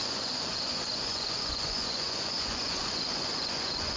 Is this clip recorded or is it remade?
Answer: remade